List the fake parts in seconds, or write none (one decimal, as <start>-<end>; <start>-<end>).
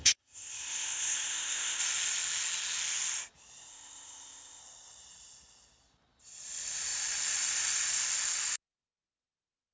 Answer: 0.0-1.8; 3.7-4.6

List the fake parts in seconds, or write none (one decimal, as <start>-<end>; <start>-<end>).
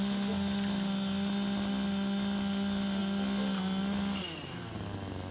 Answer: none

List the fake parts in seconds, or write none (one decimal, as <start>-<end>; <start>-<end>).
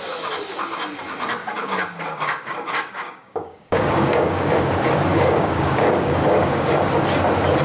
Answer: 1.4-4.5; 5.1-6.7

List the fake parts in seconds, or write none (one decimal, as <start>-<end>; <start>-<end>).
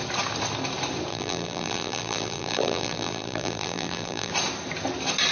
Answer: 1.1-4.3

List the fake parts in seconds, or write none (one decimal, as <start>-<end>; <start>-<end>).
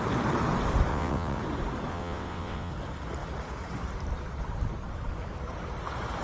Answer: 0.9-1.4; 1.9-2.7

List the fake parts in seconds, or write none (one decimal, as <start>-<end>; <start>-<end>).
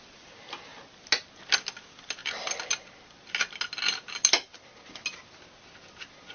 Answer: none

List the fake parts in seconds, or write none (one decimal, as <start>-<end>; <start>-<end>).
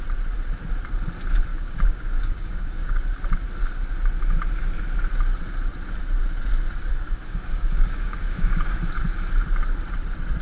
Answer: 1.5-3.0; 6.9-9.0